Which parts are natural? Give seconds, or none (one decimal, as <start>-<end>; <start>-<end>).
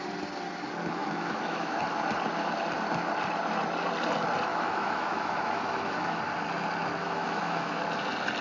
0.0-1.0; 1.8-4.5; 6.2-7.0; 7.8-8.4